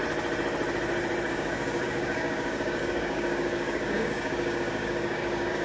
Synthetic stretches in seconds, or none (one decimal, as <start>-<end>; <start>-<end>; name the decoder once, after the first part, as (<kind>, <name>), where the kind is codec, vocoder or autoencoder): 1.3-5.6 (codec, DAC)